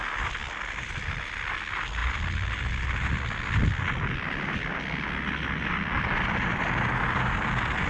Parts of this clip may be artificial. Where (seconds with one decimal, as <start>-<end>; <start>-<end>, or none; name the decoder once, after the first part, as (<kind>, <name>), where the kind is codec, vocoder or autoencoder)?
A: 0.4-1.3 (vocoder, BigVGAN v2)